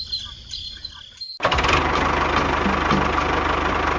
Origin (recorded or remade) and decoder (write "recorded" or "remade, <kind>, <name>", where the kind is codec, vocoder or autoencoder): recorded